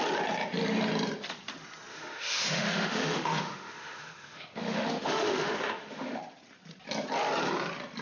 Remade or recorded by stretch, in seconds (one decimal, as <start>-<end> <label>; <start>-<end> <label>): 0.0-1.9 recorded; 1.9-6.2 remade; 6.2-8.0 recorded